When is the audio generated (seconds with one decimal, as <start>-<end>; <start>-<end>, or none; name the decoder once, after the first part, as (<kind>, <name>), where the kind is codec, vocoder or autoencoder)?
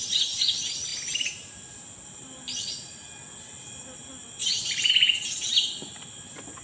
4.4-4.9 (vocoder, BigVGAN v2)